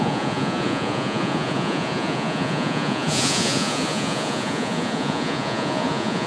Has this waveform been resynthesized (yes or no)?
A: yes